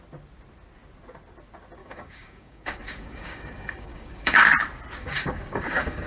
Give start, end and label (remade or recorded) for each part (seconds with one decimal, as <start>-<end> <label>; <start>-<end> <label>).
0.0-1.8 recorded; 1.8-4.4 remade; 4.4-5.0 recorded; 5.0-6.1 remade